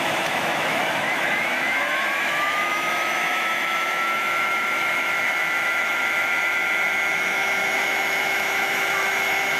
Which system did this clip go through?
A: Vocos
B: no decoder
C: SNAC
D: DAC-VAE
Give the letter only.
D